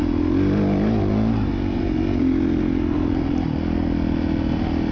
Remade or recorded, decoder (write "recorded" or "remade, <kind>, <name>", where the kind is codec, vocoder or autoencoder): recorded